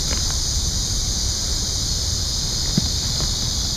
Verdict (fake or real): fake